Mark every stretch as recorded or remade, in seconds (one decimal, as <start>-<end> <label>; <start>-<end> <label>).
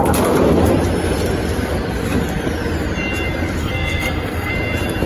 0.0-3.6 recorded; 3.6-4.5 remade; 4.5-5.1 recorded